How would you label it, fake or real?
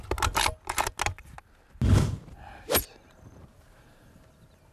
real